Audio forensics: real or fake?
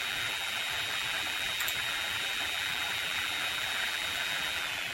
fake